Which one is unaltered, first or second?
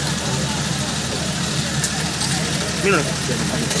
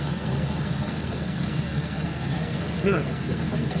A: first